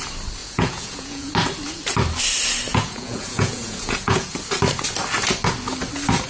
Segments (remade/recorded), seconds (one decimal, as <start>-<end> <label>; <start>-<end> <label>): 0.0-0.4 recorded; 0.4-1.3 remade; 1.3-2.7 recorded; 2.7-4.3 remade; 4.3-6.3 recorded